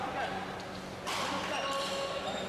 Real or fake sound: real